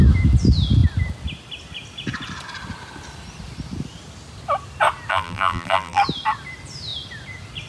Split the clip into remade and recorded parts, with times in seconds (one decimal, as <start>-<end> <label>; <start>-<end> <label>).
0.0-5.1 recorded; 5.1-6.0 remade; 6.0-7.7 recorded